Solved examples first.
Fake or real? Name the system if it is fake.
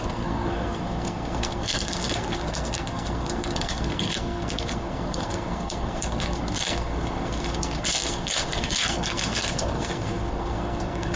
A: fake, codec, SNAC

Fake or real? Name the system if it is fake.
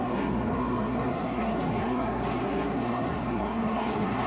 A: fake, codec, SNAC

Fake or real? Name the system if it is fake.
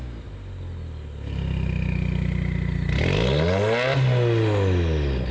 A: real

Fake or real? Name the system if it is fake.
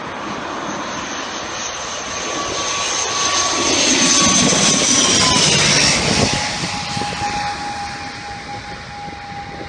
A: real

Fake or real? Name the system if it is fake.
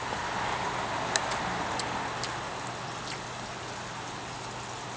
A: real